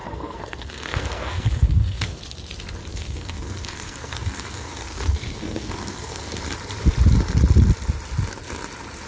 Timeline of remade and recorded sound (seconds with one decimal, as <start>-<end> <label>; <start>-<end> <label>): 0.0-2.2 remade; 2.2-2.9 recorded; 2.9-6.4 remade; 6.4-9.1 recorded